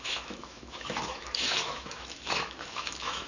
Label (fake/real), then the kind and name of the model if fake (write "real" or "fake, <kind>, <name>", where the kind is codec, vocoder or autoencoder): fake, autoencoder, DAC-VAE